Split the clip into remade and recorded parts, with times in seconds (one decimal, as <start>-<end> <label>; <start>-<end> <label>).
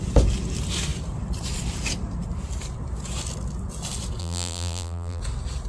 0.0-4.2 recorded; 4.2-5.2 remade; 5.2-5.7 recorded